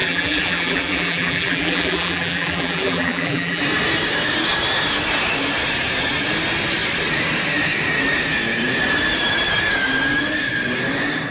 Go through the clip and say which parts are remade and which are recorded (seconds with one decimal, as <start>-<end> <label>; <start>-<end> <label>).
0.0-3.6 remade; 3.6-11.3 recorded